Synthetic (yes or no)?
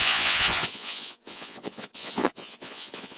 yes